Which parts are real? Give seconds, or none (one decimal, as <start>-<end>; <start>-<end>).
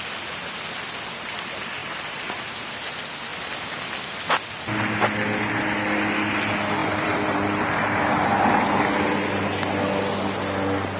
0.0-1.8; 2.7-6.8; 8.0-11.0